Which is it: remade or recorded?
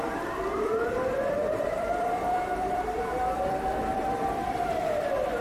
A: remade